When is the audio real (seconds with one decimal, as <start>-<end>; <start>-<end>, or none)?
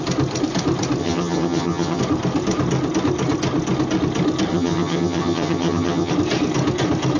0.0-1.0; 2.0-4.5; 6.1-7.2